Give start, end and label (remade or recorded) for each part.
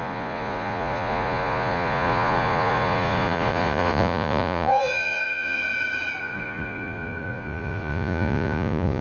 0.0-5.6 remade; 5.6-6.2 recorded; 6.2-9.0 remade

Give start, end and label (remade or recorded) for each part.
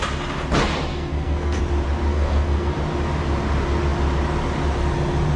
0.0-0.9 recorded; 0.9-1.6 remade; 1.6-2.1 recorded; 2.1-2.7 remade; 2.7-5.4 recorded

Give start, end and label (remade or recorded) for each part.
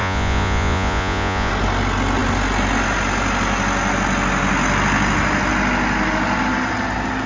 0.0-1.5 remade; 1.5-7.3 recorded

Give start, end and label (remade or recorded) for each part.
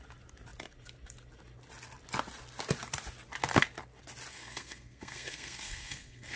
0.0-4.3 recorded; 4.3-6.4 remade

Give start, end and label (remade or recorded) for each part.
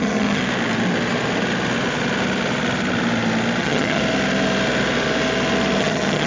0.0-0.4 remade; 0.4-3.6 recorded; 3.6-4.0 remade; 4.0-5.8 recorded; 5.8-6.3 remade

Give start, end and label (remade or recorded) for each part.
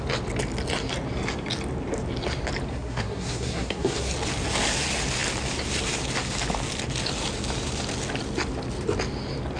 0.0-2.7 recorded; 2.7-4.1 remade; 4.1-9.6 recorded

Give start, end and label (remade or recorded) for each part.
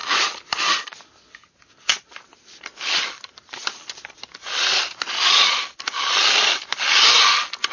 0.0-7.7 recorded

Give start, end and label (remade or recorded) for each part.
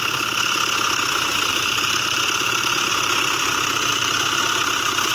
0.0-1.5 recorded; 1.5-2.9 remade; 2.9-3.9 recorded; 3.9-4.4 remade; 4.4-5.1 recorded